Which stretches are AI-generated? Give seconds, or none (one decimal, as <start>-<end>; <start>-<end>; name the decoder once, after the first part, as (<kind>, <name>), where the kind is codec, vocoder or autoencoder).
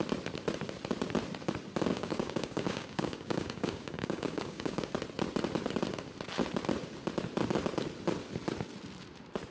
1.9-4.9 (codec, DAC)